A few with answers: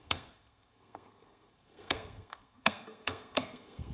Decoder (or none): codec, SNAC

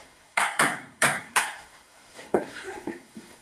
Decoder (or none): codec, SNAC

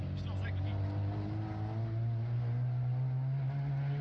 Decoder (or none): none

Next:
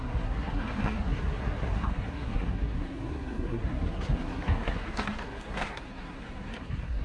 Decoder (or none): codec, SNAC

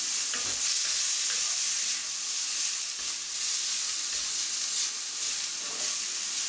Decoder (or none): none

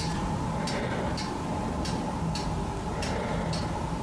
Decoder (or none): none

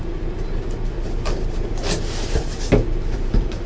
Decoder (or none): none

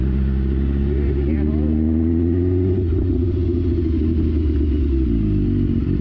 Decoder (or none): none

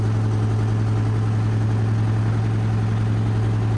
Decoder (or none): none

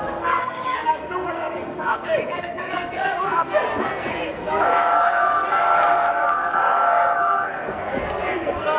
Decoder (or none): codec, SNAC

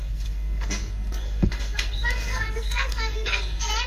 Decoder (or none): codec, SNAC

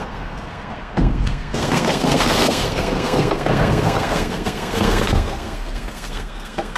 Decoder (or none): codec, SNAC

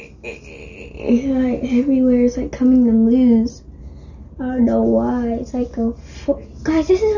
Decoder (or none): none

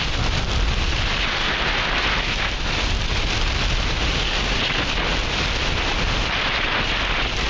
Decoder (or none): none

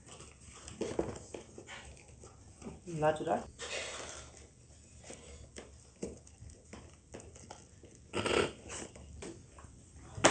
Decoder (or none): none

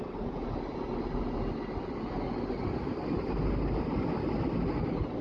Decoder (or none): none